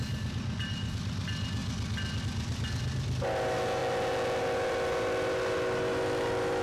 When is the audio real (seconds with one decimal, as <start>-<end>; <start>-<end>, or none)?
1.6-2.2; 3.8-4.4